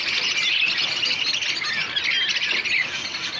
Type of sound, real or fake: real